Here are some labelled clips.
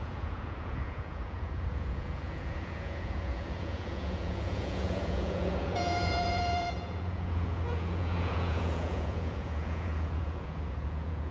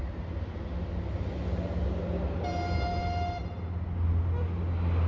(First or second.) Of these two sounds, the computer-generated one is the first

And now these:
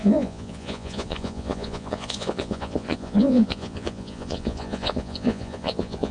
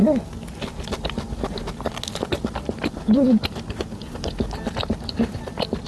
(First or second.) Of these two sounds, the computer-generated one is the first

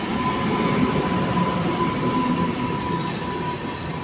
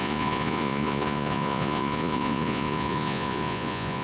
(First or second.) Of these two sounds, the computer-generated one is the second